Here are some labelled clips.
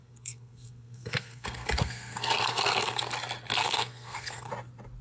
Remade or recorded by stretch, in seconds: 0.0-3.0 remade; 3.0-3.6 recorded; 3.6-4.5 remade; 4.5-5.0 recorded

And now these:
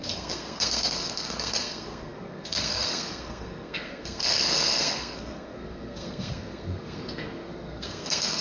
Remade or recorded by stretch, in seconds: 0.0-8.4 remade

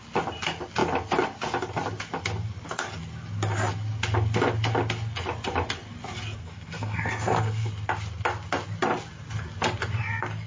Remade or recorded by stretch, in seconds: 0.0-6.4 recorded; 6.4-7.7 remade; 7.7-10.5 recorded

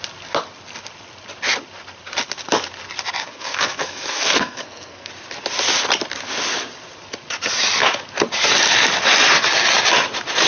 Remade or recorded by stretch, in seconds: 0.0-3.2 recorded; 3.2-5.1 remade; 5.1-10.5 recorded

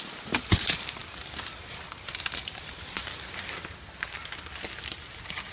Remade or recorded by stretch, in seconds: 0.0-5.5 recorded

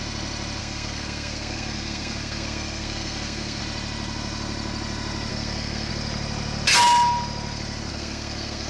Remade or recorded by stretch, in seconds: 0.0-0.6 recorded; 0.6-3.6 remade; 3.6-5.3 recorded; 5.3-5.9 remade; 5.9-7.9 recorded; 7.9-8.7 remade

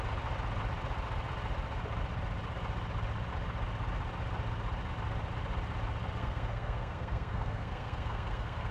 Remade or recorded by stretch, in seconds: 0.0-6.2 recorded; 6.2-8.7 remade